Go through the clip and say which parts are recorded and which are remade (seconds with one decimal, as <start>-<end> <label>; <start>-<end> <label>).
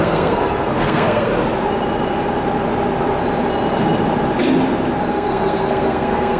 0.0-1.3 remade; 1.3-5.1 recorded; 5.1-6.4 remade